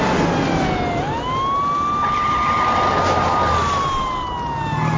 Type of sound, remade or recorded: recorded